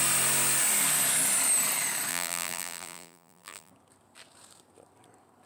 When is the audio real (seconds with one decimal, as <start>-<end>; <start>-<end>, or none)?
0.0-2.1; 3.7-5.5